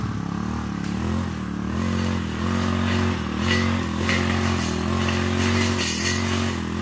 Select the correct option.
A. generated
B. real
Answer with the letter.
B